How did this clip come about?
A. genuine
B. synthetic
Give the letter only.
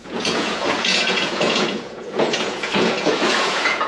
B